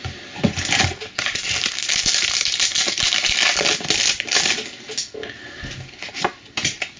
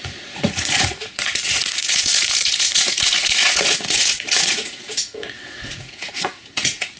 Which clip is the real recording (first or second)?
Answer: first